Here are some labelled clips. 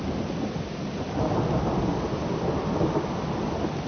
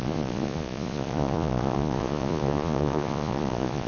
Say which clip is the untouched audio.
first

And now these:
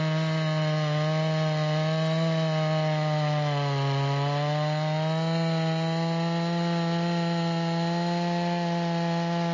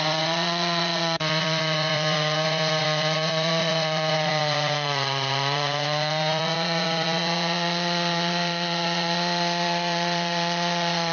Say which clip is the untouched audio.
first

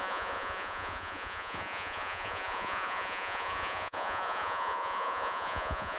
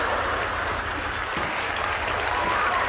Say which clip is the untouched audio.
second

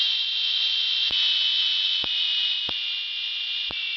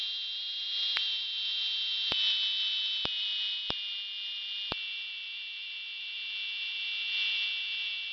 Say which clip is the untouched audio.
second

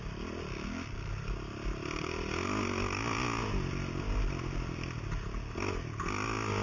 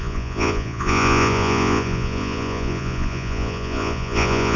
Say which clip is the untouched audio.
first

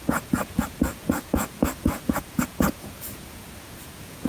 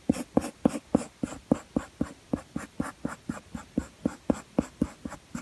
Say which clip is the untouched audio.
second